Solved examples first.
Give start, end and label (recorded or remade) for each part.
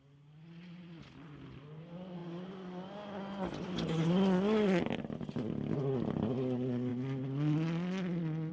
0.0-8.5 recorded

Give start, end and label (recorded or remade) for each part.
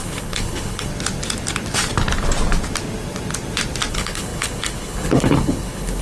0.0-0.9 remade; 0.9-3.9 recorded; 3.9-6.0 remade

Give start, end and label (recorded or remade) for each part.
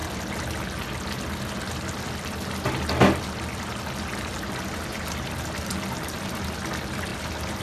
0.0-4.5 recorded; 4.5-7.1 remade; 7.1-7.6 recorded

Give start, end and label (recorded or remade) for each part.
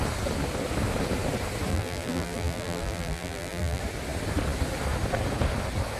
0.0-1.7 recorded; 1.7-3.8 remade; 3.8-6.0 recorded